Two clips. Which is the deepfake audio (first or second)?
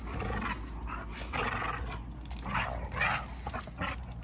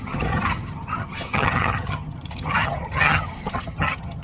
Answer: second